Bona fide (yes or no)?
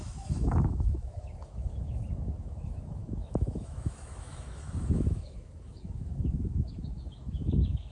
no